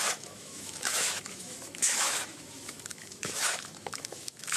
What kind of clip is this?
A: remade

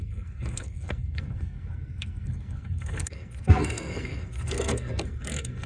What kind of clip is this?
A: remade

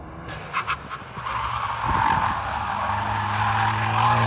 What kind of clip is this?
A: recorded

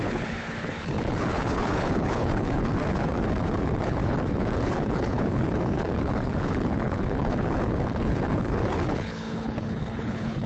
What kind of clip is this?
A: remade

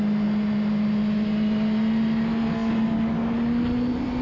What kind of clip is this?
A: recorded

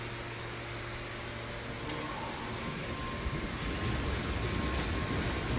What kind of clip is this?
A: recorded